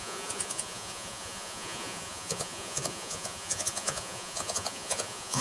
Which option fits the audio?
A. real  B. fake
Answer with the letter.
B